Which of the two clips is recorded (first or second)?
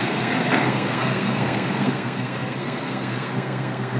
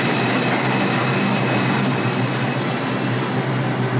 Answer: second